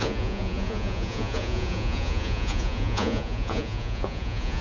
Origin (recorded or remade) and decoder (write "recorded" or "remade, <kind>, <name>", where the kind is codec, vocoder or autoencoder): remade, vocoder, Vocos